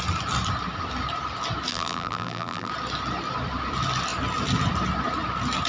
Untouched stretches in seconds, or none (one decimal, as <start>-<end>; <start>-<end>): 0.0-1.7; 2.7-5.7